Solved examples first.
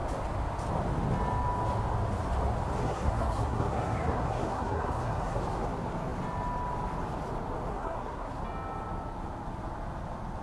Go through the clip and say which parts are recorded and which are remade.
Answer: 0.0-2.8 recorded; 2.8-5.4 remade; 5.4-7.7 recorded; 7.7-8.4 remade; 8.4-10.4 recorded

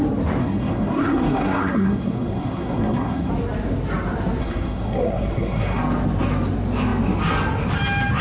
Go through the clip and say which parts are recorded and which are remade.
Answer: 0.0-0.4 recorded; 0.4-3.3 remade; 3.3-4.4 recorded; 4.4-5.8 remade; 5.8-8.2 recorded

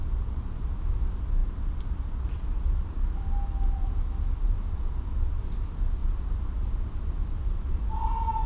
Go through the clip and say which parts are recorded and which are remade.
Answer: 0.0-8.5 recorded

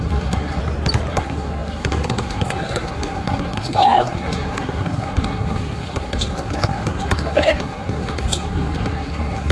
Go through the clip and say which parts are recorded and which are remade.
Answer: 0.0-0.6 remade; 0.6-1.1 recorded; 1.1-9.5 remade

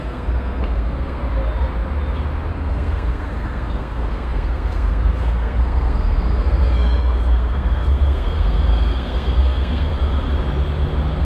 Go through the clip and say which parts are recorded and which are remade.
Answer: 0.0-1.2 remade; 1.2-2.5 recorded; 2.5-9.9 remade; 9.9-11.2 recorded

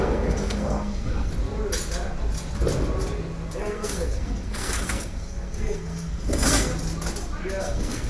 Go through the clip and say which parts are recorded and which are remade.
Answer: 0.0-1.3 remade; 1.3-3.6 recorded; 3.6-6.7 remade; 6.7-7.6 recorded; 7.6-8.1 remade